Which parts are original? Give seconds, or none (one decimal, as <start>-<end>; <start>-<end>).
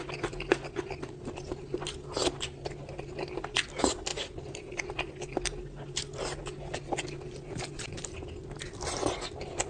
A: 0.0-9.7